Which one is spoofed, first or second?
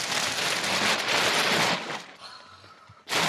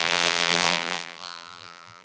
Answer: second